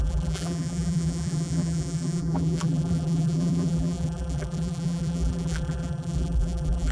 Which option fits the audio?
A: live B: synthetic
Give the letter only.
B